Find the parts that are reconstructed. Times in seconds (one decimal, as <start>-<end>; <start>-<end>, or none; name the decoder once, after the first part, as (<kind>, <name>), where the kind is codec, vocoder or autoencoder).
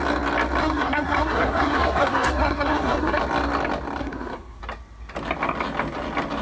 0.6-3.2 (codec, SNAC); 4.0-4.6